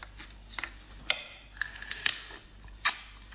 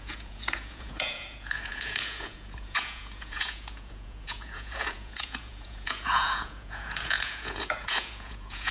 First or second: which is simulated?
second